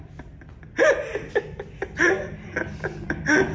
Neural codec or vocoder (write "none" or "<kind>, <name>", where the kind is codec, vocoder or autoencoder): vocoder, BigVGAN v2